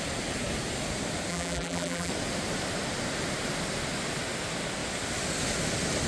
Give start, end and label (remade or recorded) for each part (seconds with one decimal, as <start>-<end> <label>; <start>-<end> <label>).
0.0-1.3 recorded; 1.3-2.1 remade; 2.1-6.1 recorded